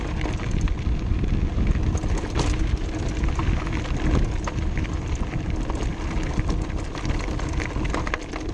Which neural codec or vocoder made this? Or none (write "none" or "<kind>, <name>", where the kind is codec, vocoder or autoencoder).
none